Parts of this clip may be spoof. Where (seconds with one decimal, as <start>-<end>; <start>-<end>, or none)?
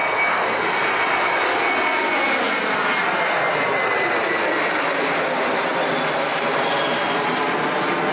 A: none